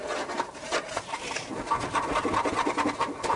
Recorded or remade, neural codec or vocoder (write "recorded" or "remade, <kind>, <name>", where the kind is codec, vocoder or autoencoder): recorded